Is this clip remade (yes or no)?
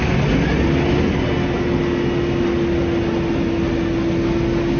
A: no